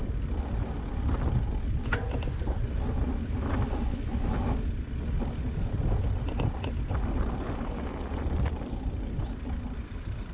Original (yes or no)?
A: yes